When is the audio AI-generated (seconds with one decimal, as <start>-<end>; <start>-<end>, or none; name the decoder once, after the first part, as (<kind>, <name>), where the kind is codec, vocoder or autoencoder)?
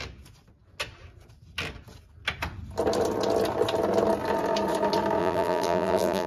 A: 5.2-6.3 (vocoder, BigVGAN v2)